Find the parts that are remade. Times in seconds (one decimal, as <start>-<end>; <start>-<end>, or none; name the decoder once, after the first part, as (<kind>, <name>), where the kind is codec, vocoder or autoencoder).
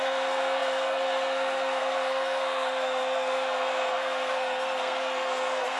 0.0-5.8 (codec, SNAC)